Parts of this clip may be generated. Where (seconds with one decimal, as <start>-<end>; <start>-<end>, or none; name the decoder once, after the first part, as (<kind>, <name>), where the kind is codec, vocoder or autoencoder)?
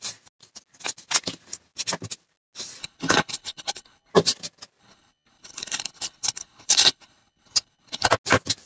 2.8-4.1 (codec, HILCodec); 4.8-8.1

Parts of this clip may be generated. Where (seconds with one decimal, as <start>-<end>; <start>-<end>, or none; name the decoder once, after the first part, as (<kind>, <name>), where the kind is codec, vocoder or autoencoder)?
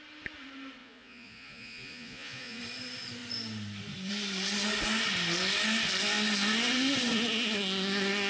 0.8-2.6 (vocoder, Vocos)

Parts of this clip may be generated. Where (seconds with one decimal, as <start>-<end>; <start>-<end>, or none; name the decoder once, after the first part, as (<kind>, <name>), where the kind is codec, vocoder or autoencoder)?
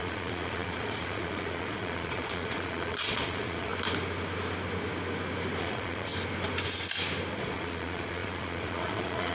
0.0-3.7 (vocoder, Vocos); 5.6-6.1; 7.3-9.3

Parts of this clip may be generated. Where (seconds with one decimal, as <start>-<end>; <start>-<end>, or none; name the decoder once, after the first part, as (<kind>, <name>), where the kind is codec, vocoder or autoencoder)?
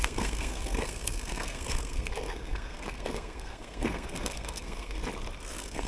0.0-5.0 (codec, SNAC); 5.5-5.9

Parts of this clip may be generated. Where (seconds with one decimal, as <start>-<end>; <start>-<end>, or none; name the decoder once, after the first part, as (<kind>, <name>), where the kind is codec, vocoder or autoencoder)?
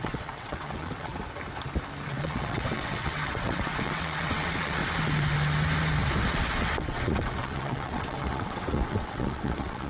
0.0-1.1 (vocoder, WaveNeXt); 2.1-4.8; 6.3-9.9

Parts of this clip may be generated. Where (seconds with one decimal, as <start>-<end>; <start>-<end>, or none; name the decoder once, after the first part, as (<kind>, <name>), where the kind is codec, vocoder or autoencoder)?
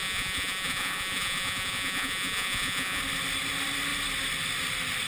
0.0-3.0 (vocoder, Vocos)